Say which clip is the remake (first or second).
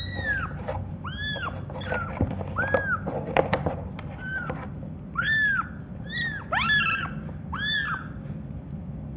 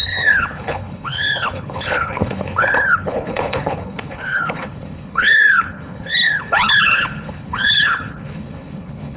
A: second